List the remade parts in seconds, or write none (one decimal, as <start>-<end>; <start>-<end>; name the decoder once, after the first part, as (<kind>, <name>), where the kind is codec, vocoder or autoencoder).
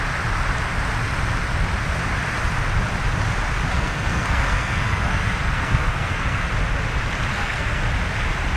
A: 3.7-6.5 (codec, SNAC); 7.3-7.9